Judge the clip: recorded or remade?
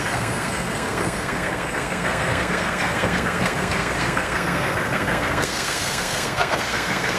remade